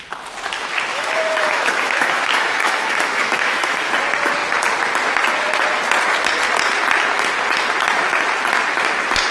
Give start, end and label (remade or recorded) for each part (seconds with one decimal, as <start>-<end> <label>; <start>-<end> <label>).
0.0-0.9 recorded; 0.9-3.9 remade; 3.9-9.3 recorded